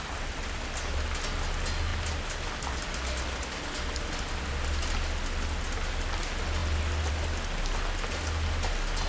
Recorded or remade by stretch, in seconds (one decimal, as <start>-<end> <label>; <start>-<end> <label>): 0.0-9.1 recorded